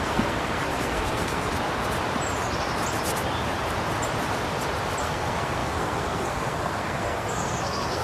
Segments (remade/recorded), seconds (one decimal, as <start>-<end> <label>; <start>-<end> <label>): 0.0-1.5 remade; 1.5-5.0 recorded; 5.0-8.0 remade